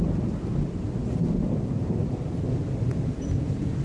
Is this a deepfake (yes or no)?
no